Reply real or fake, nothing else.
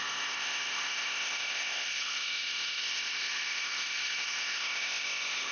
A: fake